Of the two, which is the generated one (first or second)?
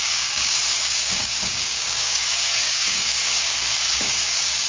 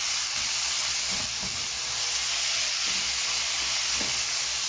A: first